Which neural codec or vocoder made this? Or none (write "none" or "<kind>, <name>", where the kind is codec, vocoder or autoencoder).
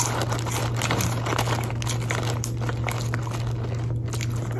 none